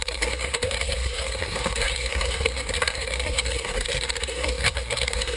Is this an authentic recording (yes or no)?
no